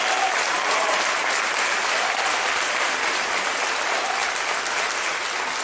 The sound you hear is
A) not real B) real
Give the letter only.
A